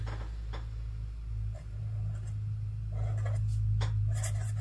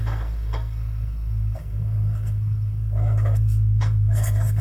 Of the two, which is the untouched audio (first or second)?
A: first